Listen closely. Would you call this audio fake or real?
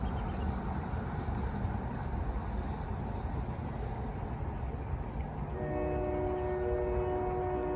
real